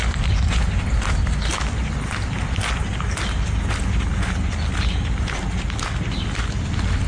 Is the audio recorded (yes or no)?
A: yes